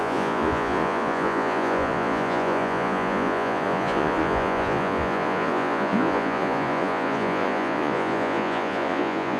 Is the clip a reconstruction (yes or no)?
yes